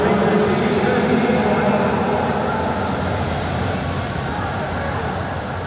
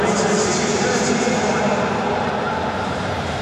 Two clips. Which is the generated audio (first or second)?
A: second